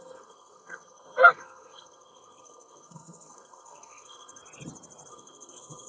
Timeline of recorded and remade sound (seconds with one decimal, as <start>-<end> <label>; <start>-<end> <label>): 0.0-4.4 remade; 4.4-5.1 recorded; 5.1-5.9 remade